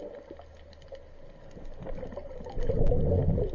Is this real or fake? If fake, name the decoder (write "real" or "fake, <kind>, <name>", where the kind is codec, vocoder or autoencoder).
real